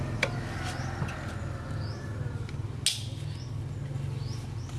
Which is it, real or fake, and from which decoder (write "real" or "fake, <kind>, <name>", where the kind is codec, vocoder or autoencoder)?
real